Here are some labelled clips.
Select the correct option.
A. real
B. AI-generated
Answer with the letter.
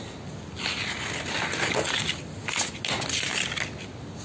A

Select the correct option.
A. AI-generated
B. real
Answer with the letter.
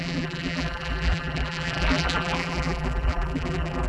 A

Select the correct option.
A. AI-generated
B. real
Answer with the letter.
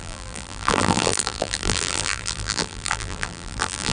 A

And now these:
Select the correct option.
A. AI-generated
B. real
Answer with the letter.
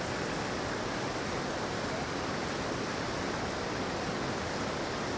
B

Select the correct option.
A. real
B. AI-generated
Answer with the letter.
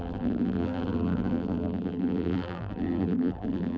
B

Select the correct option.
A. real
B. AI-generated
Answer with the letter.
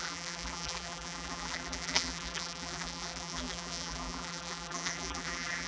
B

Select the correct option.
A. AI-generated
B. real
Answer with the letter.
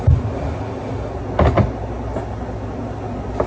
B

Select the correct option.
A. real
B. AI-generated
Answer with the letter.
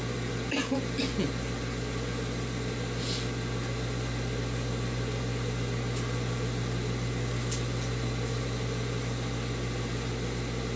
A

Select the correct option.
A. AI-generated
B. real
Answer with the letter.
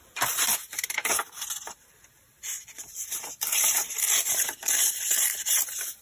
A